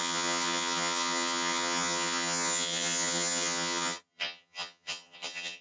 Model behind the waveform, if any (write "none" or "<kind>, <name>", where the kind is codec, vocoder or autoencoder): vocoder, HiFi-GAN